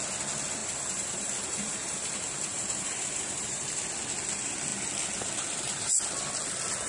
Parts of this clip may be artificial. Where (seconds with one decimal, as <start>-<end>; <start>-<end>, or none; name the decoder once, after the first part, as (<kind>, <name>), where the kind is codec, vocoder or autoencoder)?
0.6-3.8 (vocoder, BigVGAN v2)